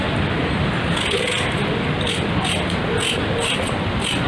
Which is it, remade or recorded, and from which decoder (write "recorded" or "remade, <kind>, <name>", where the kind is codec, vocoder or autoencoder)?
recorded